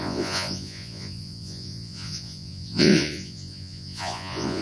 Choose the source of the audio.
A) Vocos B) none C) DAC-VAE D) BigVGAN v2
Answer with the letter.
A